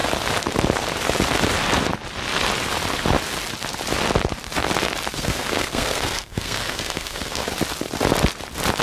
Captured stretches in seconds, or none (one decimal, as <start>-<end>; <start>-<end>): 0.0-5.1; 7.4-8.8